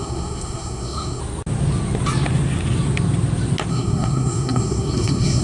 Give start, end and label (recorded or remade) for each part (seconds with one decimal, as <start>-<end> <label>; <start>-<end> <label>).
0.0-1.2 remade; 1.2-3.7 recorded; 3.7-5.4 remade